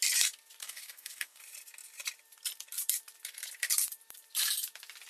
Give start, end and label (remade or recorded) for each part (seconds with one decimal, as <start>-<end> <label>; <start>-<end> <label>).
0.0-0.6 recorded; 0.6-1.4 remade; 1.4-5.1 recorded